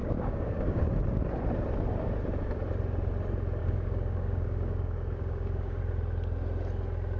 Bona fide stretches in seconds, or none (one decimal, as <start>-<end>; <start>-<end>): 0.9-3.6; 5.8-7.2